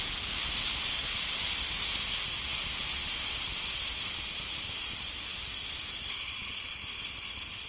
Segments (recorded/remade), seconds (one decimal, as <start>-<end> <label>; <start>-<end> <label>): 0.0-7.7 recorded